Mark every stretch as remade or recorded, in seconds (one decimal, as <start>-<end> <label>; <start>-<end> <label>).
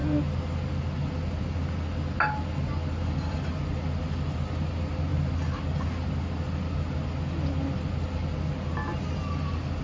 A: 0.0-9.8 recorded